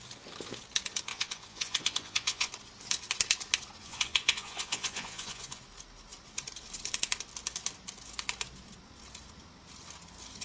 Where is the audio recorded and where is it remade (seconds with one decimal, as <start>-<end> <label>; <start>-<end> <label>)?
0.0-1.1 recorded; 1.1-2.5 remade; 2.5-3.8 recorded; 3.8-5.6 remade; 5.6-10.4 recorded